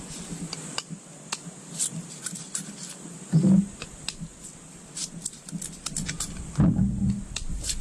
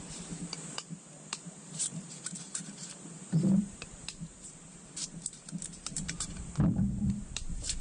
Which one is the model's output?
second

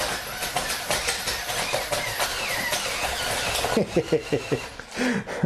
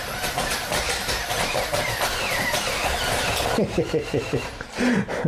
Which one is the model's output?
second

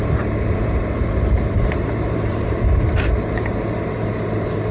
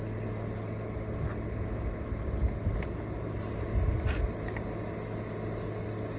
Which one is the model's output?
first